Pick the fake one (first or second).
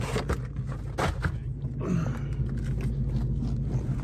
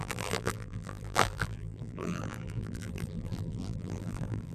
second